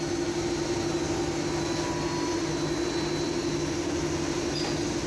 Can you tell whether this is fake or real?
real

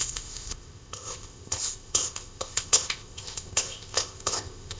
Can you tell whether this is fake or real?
fake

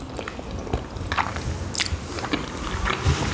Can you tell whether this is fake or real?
real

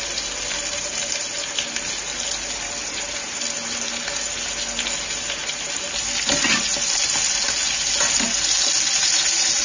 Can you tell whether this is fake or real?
real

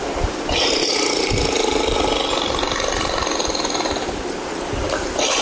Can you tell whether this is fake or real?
real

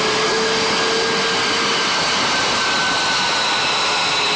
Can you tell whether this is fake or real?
real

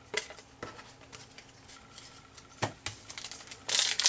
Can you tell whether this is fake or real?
real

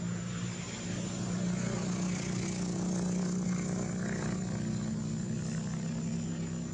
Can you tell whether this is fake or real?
real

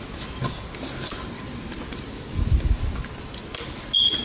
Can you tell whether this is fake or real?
real